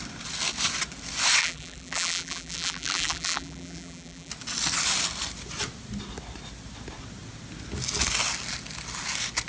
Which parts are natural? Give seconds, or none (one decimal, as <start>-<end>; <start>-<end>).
0.0-1.4; 4.3-9.5

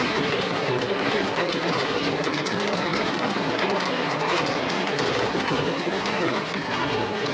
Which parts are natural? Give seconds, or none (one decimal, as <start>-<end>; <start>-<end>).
none